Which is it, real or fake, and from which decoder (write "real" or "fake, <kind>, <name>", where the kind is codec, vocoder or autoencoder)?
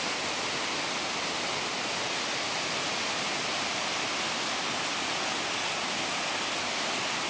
real